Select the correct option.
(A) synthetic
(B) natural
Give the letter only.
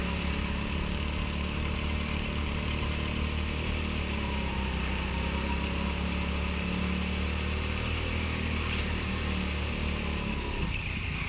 B